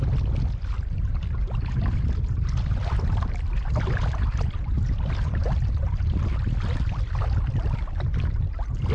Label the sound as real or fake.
real